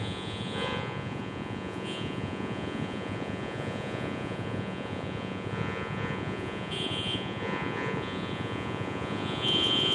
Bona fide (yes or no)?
no